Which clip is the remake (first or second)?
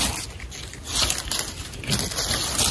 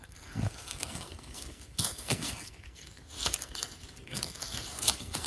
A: second